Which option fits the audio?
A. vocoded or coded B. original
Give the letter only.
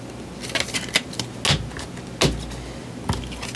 B